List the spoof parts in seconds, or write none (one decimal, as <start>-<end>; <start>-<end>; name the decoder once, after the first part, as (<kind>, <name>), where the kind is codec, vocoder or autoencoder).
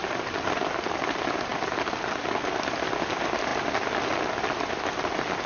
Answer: none